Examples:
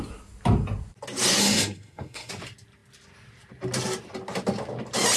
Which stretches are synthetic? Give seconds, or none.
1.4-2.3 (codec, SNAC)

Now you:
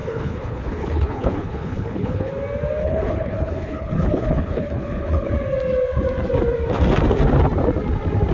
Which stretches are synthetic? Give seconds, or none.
0.0-2.3 (codec, HILCodec); 2.8-5.3

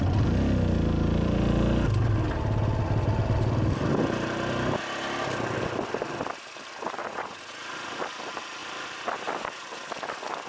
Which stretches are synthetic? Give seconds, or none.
7.0-8.0 (vocoder, Vocos)